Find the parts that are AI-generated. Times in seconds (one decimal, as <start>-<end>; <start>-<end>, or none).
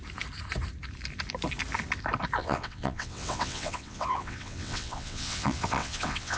2.4-6.4